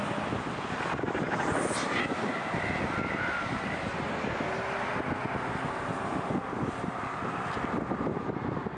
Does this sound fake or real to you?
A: real